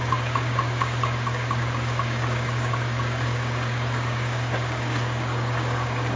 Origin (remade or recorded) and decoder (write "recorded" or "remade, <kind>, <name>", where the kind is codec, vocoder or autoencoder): remade, codec, DAC